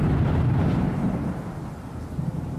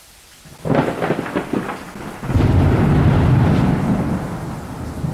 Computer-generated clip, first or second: first